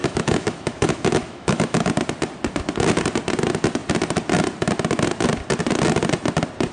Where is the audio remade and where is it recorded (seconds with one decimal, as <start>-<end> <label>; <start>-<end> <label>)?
0.0-1.9 remade; 1.9-6.7 recorded